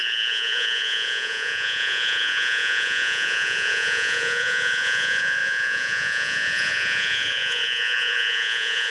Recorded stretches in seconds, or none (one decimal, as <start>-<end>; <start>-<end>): none